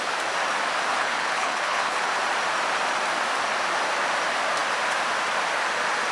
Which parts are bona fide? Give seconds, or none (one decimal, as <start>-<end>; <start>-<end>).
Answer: 0.0-0.9; 2.1-6.1